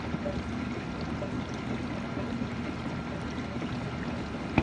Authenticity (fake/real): real